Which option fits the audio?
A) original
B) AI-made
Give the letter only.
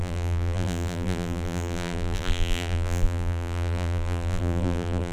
B